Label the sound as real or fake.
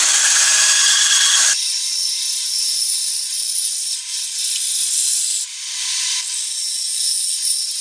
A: real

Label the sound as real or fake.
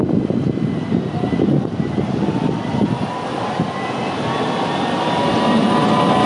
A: real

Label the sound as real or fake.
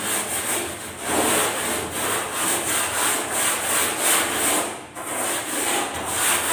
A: real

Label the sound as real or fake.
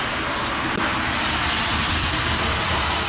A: real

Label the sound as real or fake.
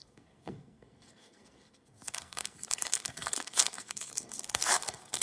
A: fake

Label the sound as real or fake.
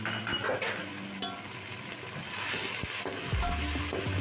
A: real